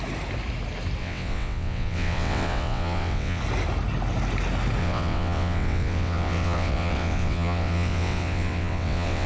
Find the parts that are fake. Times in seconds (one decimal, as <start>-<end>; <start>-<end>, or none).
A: 1.0-3.4; 4.8-9.3